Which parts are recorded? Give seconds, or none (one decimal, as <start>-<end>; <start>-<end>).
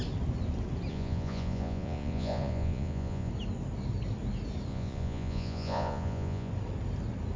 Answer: 0.0-0.9; 3.3-4.7; 6.5-7.4